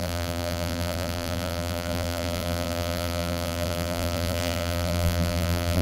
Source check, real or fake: fake